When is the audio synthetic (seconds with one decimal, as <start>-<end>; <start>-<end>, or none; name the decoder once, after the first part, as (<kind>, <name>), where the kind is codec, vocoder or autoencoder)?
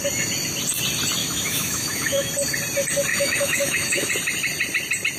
1.2-2.3 (autoencoder, DAC-VAE); 3.1-4.1